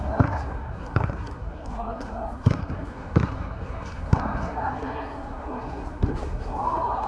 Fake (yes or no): yes